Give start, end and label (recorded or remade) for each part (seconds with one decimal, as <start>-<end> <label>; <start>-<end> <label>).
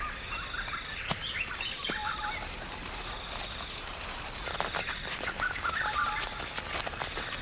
0.0-2.0 recorded; 2.0-4.3 remade; 4.3-7.4 recorded